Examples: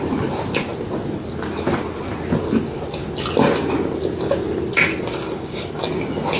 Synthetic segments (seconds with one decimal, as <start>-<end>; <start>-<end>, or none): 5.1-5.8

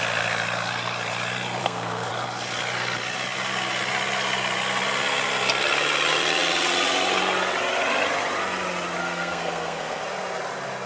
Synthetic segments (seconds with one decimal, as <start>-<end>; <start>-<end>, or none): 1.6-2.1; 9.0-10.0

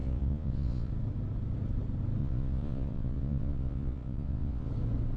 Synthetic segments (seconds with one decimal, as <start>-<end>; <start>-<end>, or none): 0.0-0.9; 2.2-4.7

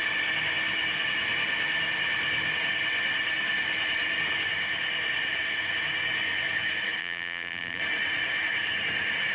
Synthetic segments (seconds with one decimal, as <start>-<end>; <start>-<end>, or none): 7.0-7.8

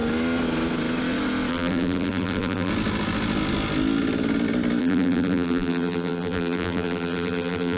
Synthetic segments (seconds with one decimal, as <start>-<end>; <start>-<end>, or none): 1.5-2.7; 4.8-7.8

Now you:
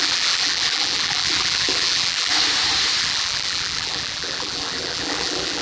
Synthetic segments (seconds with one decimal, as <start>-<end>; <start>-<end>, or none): 0.0-2.3; 3.0-5.6

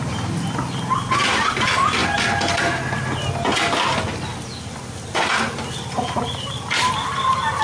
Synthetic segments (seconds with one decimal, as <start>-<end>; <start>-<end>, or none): none